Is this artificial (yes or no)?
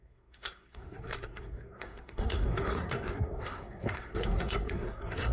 yes